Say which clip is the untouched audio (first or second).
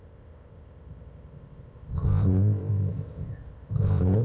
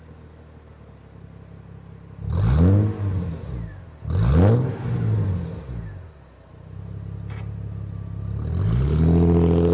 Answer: second